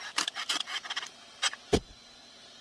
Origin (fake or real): fake